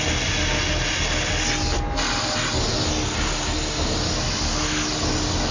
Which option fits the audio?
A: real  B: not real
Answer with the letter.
A